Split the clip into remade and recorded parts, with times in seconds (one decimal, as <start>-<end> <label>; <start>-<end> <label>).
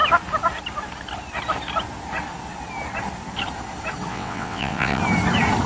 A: 0.0-4.1 recorded; 4.1-5.0 remade; 5.0-5.7 recorded